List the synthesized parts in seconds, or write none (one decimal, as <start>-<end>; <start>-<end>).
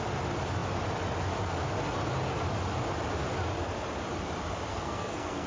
4.7-5.5